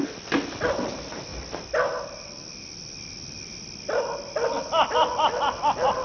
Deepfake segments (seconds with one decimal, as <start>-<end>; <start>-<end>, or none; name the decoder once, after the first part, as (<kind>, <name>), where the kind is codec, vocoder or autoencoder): none